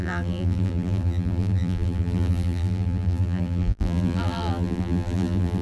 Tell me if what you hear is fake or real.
fake